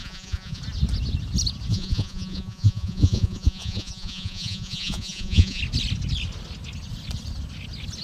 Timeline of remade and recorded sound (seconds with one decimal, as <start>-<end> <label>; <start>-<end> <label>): 0.0-0.6 remade; 0.6-1.7 recorded; 1.7-5.6 remade; 5.6-8.0 recorded